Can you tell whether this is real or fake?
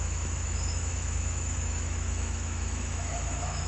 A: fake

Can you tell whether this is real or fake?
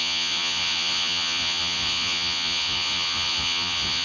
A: fake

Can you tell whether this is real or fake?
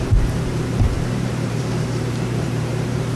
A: fake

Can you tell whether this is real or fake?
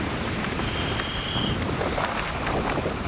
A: real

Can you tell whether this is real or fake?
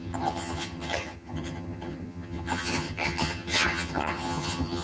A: fake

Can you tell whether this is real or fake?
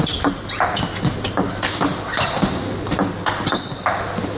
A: real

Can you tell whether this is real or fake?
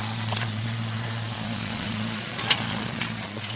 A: fake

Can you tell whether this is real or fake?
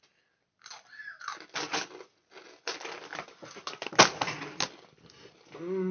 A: real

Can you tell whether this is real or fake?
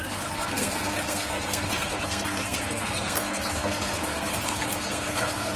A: fake